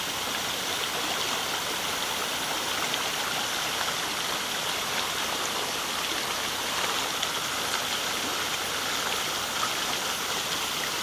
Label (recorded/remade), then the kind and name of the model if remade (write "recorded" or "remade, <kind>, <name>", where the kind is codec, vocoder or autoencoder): recorded